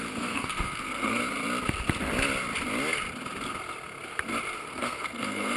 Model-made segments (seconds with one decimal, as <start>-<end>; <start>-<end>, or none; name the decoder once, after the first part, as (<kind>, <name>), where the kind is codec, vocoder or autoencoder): 0.0-1.2 (codec, SNAC); 4.6-5.6